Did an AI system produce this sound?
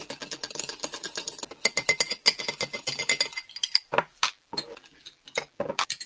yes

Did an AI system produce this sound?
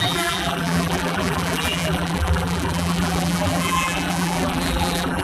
yes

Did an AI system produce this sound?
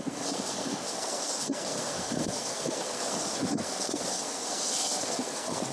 yes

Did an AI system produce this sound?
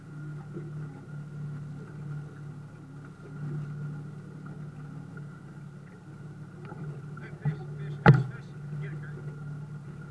no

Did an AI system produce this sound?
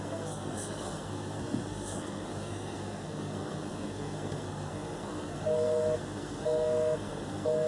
yes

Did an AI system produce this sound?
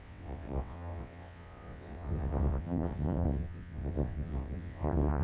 yes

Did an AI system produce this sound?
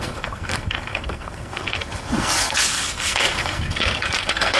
yes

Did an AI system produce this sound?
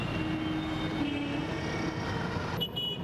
no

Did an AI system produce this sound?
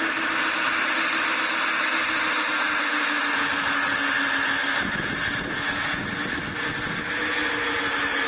no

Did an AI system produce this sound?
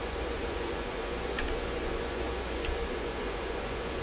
yes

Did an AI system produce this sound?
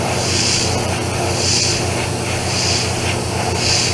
yes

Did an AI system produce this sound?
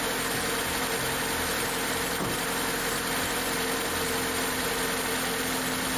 no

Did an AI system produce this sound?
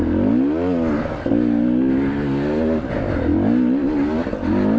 no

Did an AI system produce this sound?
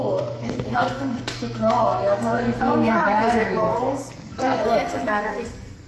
yes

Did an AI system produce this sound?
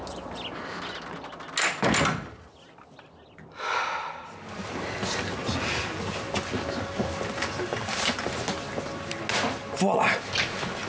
no